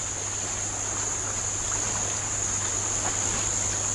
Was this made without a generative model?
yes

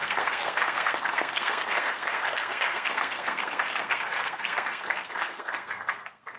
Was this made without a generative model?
no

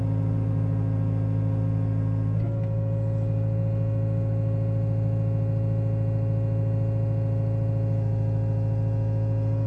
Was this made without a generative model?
yes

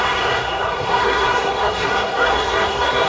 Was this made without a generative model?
no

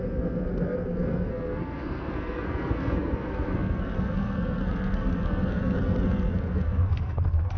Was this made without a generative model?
no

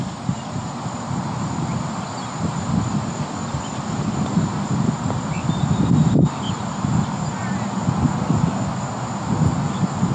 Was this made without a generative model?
yes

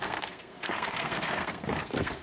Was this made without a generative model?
no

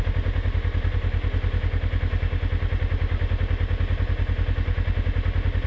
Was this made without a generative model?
yes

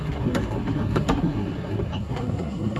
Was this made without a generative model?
no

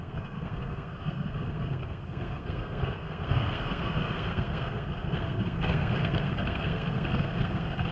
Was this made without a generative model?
no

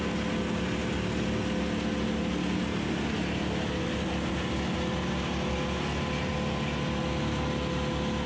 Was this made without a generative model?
yes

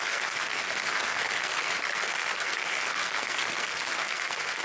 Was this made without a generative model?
no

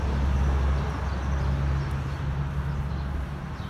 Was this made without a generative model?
yes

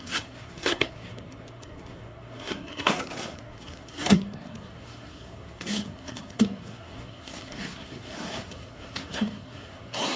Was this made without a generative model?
no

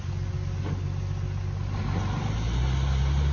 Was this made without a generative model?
yes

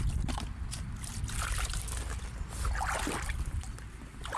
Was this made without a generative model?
yes